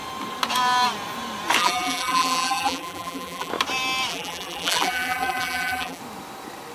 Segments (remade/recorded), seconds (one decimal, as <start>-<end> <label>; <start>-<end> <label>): 0.0-1.6 recorded; 1.6-3.5 remade; 3.5-4.1 recorded; 4.1-6.0 remade; 6.0-6.7 recorded